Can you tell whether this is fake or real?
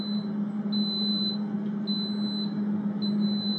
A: real